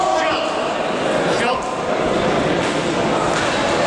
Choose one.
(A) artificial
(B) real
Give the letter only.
B